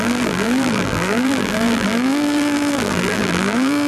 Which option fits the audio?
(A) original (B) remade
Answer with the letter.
B